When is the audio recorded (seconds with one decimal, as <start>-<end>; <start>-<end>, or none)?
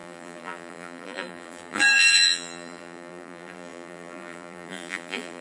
none